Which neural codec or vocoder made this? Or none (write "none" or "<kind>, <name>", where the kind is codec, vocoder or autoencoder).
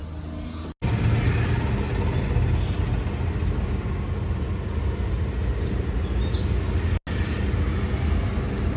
none